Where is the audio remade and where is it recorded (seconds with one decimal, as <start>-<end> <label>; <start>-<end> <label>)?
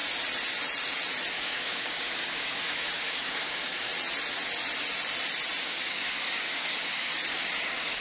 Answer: 0.0-1.3 recorded; 1.3-3.9 remade; 3.9-5.6 recorded; 5.6-7.1 remade; 7.1-7.6 recorded; 7.6-8.0 remade